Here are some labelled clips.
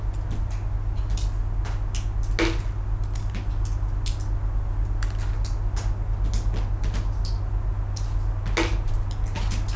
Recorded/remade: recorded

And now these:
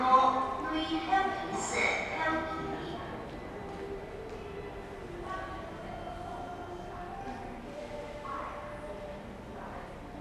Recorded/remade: recorded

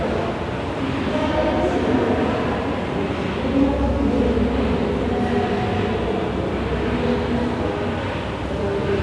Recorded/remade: recorded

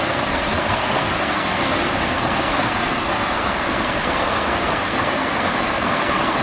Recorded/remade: remade